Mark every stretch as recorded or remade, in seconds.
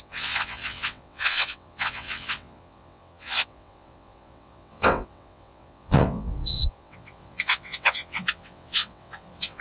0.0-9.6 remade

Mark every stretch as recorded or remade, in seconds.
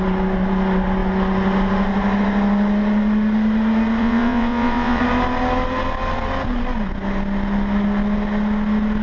0.0-4.0 recorded; 4.0-5.0 remade; 5.0-9.0 recorded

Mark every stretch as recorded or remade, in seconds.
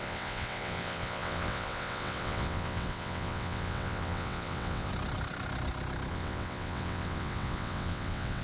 0.0-4.9 remade; 4.9-6.1 recorded; 6.1-8.4 remade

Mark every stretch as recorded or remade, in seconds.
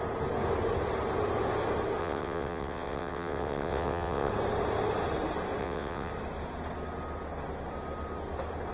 0.0-2.0 recorded; 2.0-4.3 remade; 4.3-5.6 recorded; 5.6-6.1 remade; 6.1-8.7 recorded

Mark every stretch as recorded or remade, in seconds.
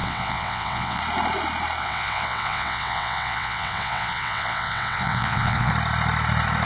0.0-1.0 remade; 1.0-1.8 recorded; 1.8-5.7 remade; 5.7-6.7 recorded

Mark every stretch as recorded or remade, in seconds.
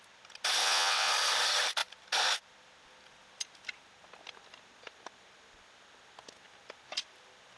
0.0-0.6 recorded; 0.6-1.1 remade; 1.1-7.6 recorded